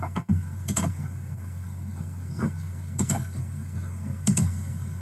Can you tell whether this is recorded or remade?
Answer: remade